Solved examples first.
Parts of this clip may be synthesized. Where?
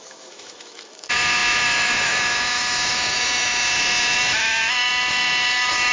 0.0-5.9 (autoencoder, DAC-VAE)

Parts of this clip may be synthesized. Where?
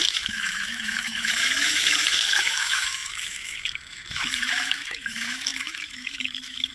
0.0-6.7 (autoencoder, DAC-VAE)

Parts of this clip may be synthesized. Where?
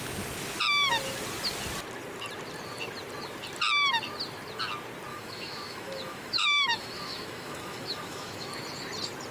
5.1-8.5 (autoencoder, DAC-VAE)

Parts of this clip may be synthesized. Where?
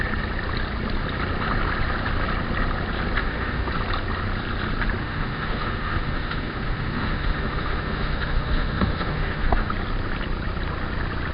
3.2-3.7 (autoencoder, DAC-VAE); 5.0-9.7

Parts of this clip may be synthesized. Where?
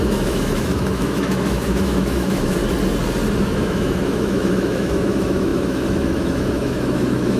0.0-2.6 (autoencoder, DAC-VAE); 3.4-7.4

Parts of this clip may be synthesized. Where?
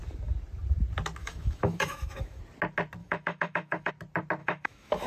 1.2-2.4 (autoencoder, DAC-VAE); 3.0-3.9; 4.4-5.1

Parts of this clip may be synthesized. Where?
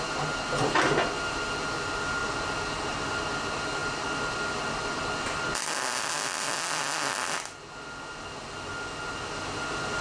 none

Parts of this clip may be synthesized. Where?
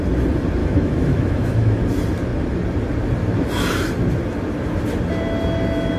0.6-1.8 (autoencoder, DAC-VAE)